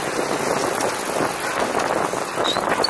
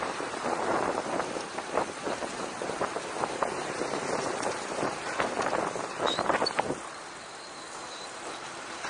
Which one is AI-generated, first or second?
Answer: second